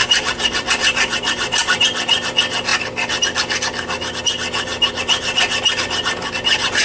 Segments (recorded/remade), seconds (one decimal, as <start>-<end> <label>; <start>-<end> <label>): 0.0-1.8 remade; 1.8-6.8 recorded